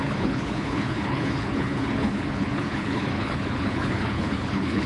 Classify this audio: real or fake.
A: fake